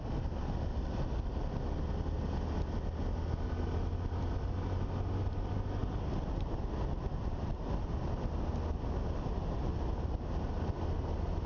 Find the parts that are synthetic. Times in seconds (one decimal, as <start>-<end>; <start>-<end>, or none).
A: none